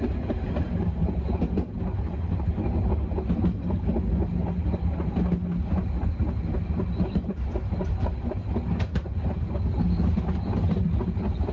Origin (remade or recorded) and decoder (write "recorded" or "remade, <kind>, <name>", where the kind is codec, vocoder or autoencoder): recorded